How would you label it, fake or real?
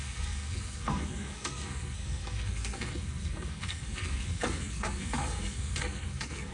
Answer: fake